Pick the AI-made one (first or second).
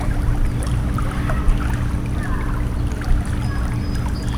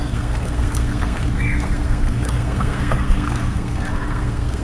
second